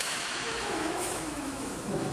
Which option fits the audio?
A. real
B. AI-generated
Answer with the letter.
B